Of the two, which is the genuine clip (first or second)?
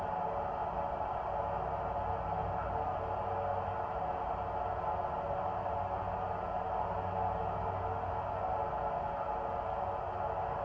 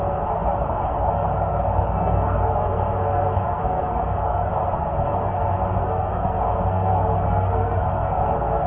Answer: first